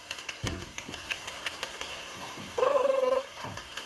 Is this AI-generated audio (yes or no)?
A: yes